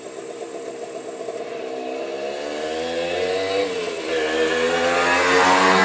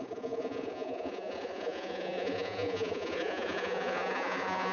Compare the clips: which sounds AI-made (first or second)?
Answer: second